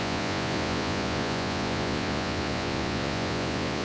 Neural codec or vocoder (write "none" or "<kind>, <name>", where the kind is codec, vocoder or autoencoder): vocoder, Vocos